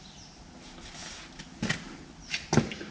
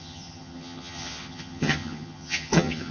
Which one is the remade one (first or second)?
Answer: second